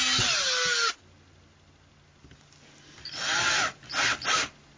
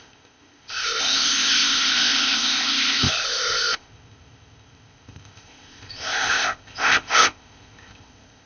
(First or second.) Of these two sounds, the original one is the first